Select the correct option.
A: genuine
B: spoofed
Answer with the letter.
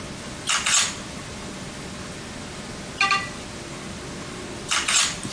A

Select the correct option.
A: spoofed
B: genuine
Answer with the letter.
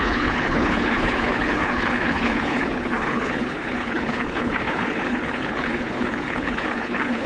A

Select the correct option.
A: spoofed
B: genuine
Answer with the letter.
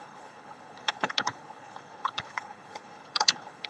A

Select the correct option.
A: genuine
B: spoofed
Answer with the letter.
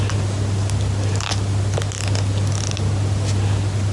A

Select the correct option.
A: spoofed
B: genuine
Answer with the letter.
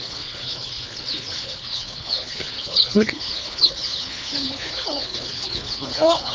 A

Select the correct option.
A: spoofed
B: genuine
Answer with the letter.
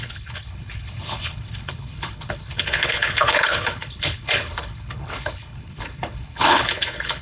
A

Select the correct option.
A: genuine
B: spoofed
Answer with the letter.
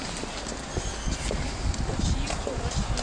A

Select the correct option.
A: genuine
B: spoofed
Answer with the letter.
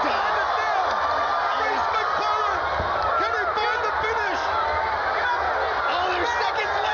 A